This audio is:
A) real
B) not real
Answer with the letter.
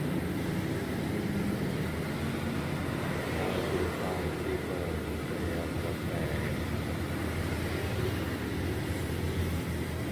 A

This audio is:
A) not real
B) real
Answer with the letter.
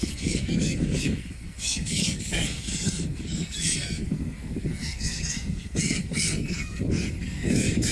A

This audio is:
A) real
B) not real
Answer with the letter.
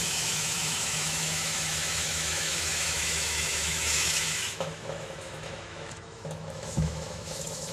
B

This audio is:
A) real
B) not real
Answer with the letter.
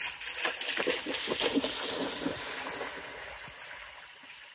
A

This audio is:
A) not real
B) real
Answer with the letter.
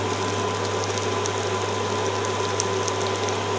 B